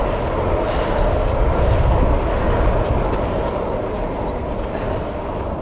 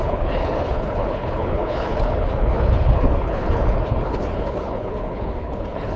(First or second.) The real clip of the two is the first